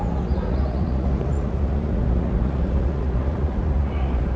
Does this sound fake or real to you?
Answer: fake